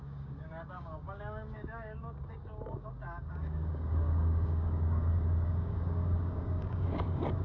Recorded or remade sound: remade